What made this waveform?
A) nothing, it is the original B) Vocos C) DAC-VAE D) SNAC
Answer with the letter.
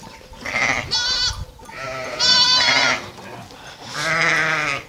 A